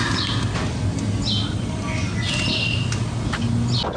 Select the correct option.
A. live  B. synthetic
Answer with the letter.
A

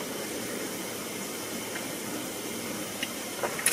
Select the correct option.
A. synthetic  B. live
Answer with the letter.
B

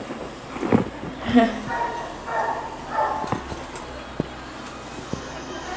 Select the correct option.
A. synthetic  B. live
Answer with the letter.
B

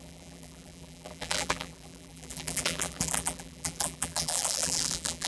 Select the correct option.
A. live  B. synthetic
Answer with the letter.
B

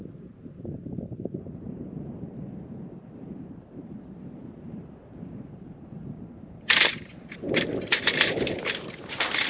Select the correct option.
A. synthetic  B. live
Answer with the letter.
A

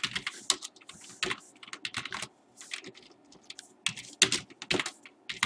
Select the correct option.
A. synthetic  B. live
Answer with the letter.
B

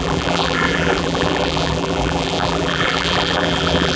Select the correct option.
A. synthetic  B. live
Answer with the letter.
A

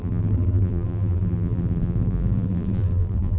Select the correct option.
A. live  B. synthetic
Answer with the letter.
B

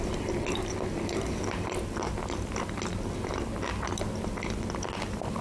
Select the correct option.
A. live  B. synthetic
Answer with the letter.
A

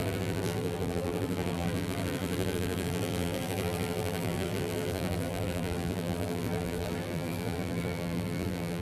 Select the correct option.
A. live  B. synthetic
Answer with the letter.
B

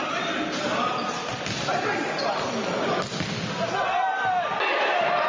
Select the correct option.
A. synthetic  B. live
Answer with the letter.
B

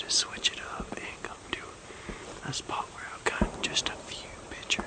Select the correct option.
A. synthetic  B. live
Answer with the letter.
A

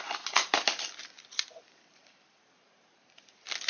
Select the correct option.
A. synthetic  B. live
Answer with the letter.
A